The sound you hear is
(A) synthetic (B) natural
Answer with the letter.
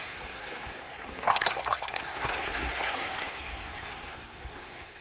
A